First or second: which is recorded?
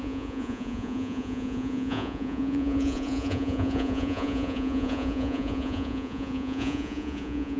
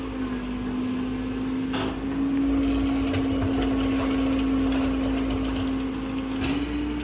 second